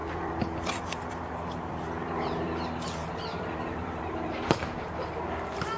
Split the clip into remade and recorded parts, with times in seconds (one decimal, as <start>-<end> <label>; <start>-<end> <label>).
0.0-5.8 remade